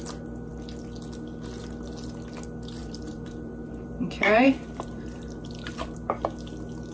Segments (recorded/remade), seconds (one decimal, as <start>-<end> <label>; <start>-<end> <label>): 0.0-2.8 recorded; 2.8-5.5 remade; 5.5-6.9 recorded